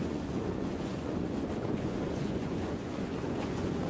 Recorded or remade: remade